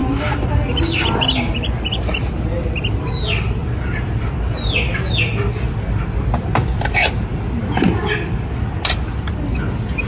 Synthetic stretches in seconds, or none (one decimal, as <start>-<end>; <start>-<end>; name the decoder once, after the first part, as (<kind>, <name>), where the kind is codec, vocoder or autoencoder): none